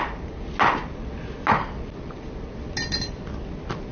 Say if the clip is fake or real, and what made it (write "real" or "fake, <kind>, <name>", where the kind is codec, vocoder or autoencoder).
real